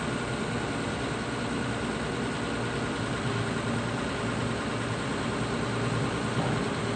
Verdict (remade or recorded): recorded